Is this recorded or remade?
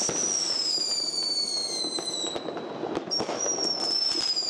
recorded